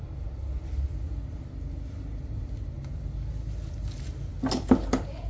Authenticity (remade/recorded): recorded